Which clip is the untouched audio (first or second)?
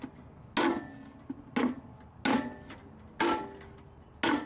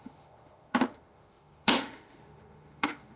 first